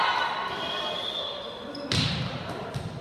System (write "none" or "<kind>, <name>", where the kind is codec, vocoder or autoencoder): none